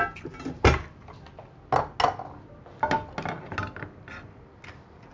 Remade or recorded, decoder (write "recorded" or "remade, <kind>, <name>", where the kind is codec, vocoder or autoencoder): recorded